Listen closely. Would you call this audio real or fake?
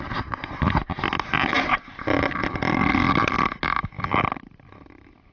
real